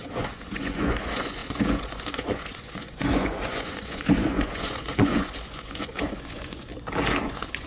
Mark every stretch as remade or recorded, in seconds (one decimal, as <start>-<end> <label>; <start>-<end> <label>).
0.0-6.7 remade; 6.7-7.2 recorded; 7.2-7.7 remade